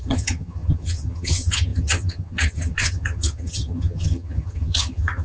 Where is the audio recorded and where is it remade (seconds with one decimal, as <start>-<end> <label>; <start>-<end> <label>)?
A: 0.0-5.2 remade